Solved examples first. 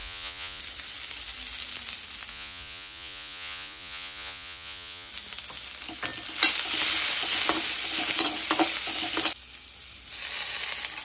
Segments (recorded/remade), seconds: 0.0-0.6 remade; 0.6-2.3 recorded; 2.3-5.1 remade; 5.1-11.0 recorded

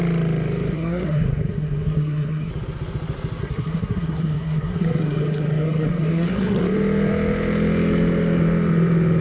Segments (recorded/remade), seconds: 0.0-0.7 recorded; 0.7-2.5 remade; 2.5-3.4 recorded; 3.4-6.6 remade; 6.6-9.2 recorded

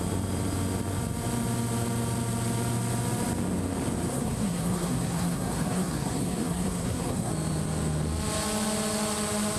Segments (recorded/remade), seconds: 0.0-4.1 recorded; 4.1-7.3 remade; 7.3-9.6 recorded

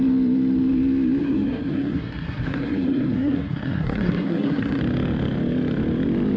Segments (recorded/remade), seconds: 0.0-1.2 recorded; 1.2-4.8 remade; 4.8-6.4 recorded

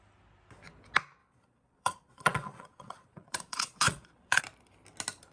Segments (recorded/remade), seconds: 0.0-1.2 recorded; 1.2-4.4 remade; 4.4-5.3 recorded

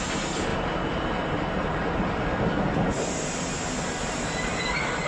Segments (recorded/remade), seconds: 0.0-0.5 recorded; 0.5-2.4 remade; 2.4-5.1 recorded

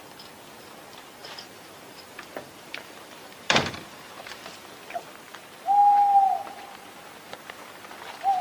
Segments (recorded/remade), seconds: 0.0-1.2 recorded; 1.2-4.2 remade; 4.2-8.4 recorded

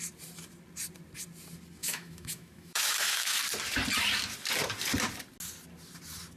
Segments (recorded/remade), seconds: 0.0-1.8 recorded; 1.8-3.4 remade; 3.4-6.4 recorded